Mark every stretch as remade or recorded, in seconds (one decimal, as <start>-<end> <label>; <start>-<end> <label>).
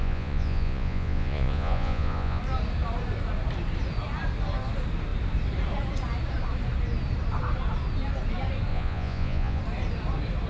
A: 0.0-2.4 remade; 2.4-8.7 recorded; 8.7-9.6 remade; 9.6-10.5 recorded